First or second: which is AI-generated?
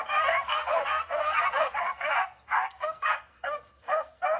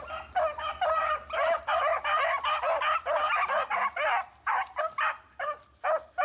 first